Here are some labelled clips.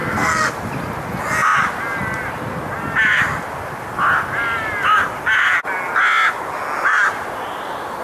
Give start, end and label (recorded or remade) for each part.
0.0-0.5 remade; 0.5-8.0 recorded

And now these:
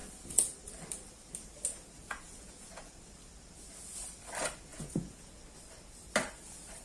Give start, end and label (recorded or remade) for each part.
0.0-2.0 recorded; 2.0-2.9 remade; 2.9-4.7 recorded; 4.7-5.4 remade; 5.4-6.8 recorded

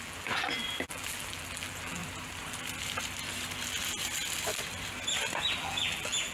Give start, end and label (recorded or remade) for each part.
0.0-2.0 remade; 2.0-5.6 recorded; 5.6-6.3 remade

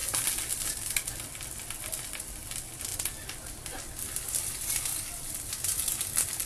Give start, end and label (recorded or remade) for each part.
0.0-6.5 recorded

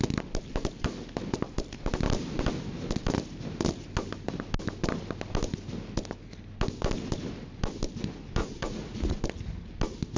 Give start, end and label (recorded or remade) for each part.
0.0-8.4 recorded; 8.4-9.2 remade; 9.2-10.2 recorded